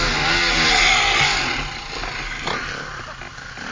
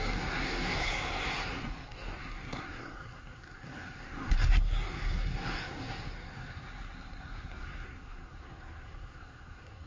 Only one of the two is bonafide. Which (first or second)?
first